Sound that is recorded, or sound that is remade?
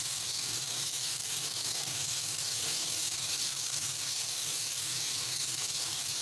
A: remade